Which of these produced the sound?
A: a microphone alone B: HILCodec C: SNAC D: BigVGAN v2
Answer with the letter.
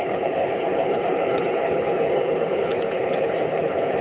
B